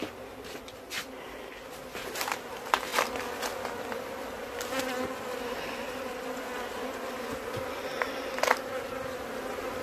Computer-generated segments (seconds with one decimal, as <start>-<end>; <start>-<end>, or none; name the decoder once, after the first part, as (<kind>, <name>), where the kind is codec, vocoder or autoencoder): none